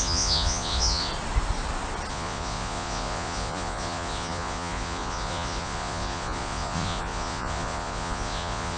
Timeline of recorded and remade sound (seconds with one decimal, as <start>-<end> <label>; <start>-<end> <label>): 0.0-1.1 remade; 1.1-2.1 recorded; 2.1-8.8 remade